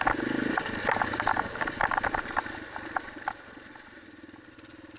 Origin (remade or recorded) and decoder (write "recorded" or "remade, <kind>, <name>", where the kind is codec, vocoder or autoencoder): recorded